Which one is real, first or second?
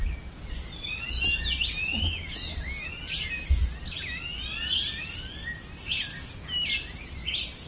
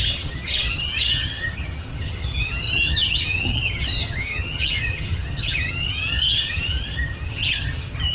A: first